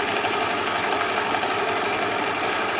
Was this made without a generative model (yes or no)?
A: yes